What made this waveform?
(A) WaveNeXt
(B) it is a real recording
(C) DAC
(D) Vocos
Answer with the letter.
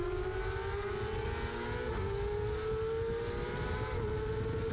B